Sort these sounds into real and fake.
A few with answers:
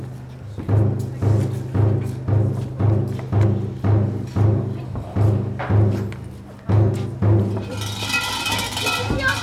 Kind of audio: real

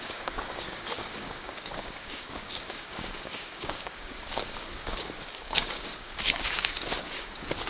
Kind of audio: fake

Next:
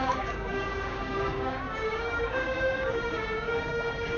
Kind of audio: fake